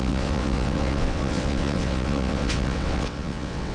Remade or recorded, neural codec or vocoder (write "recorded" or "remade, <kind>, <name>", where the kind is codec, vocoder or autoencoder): remade, vocoder, WaveNeXt